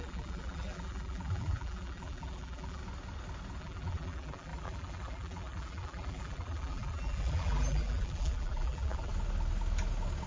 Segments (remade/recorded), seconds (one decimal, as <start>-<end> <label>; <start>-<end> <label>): 0.0-2.8 remade; 2.8-3.6 recorded; 3.6-9.1 remade; 9.1-10.3 recorded